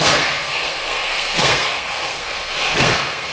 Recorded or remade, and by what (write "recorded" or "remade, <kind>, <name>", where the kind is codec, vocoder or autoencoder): remade, codec, SNAC